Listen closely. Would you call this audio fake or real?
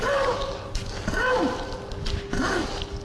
real